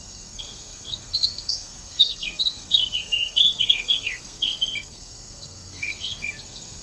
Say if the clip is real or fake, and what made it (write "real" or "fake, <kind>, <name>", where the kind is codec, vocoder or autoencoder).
fake, codec, SNAC